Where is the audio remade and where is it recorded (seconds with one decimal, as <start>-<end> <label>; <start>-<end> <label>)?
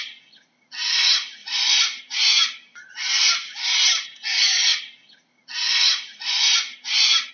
0.0-1.4 recorded; 1.4-2.9 remade; 2.9-7.3 recorded